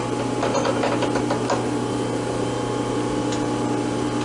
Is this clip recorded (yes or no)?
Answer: yes